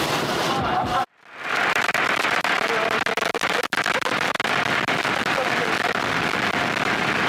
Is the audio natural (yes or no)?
yes